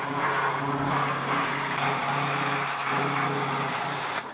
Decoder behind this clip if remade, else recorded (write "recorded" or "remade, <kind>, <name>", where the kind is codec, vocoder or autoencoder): recorded